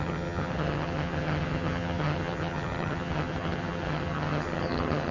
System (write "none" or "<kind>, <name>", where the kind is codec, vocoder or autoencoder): vocoder, HiFi-GAN